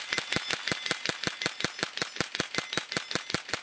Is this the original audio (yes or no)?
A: yes